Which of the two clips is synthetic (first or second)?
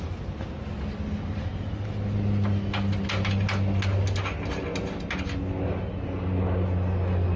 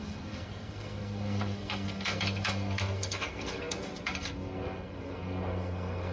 second